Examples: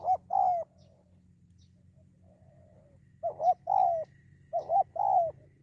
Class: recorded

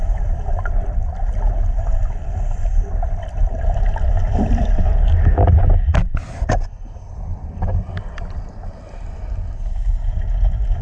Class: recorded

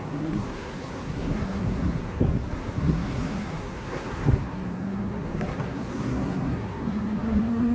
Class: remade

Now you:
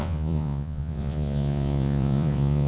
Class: remade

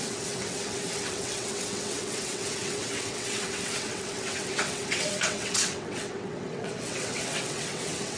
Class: remade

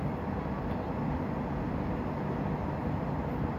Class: recorded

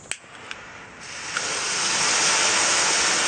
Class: recorded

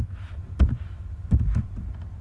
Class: recorded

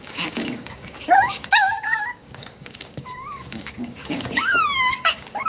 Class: remade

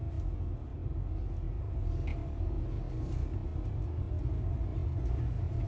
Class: recorded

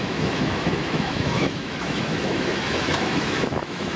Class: remade